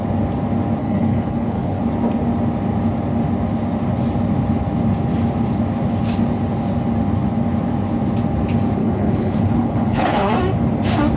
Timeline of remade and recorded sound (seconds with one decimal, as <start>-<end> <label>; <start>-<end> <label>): 0.0-0.8 recorded; 0.8-1.8 remade; 1.8-8.8 recorded; 8.8-10.3 remade; 10.3-11.2 recorded

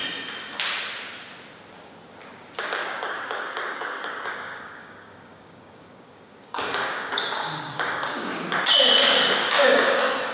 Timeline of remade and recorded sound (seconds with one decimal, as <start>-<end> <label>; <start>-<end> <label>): 0.0-2.6 recorded; 2.6-8.3 remade; 8.3-9.0 recorded; 9.0-10.3 remade

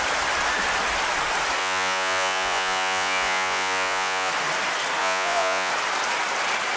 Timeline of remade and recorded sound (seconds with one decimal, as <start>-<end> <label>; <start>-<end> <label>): 0.0-1.6 recorded; 1.6-4.3 remade; 4.3-5.0 recorded; 5.0-5.7 remade; 5.7-6.8 recorded

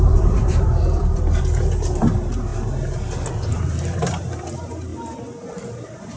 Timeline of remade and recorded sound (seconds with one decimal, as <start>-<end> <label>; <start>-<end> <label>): 0.0-2.5 remade; 2.5-3.3 recorded; 3.3-4.9 remade; 4.9-5.7 recorded; 5.7-6.2 remade

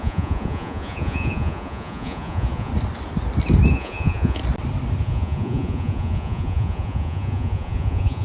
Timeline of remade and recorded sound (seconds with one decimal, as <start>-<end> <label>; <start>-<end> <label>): 0.0-2.7 remade; 2.7-3.7 recorded; 3.7-4.4 remade; 4.4-5.0 recorded; 5.0-8.2 remade